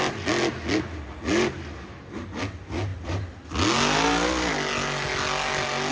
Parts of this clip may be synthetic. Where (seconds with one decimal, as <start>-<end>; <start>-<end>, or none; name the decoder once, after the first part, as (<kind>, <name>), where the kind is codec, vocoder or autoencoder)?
none